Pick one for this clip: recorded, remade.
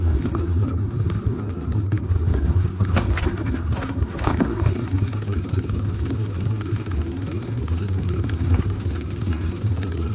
remade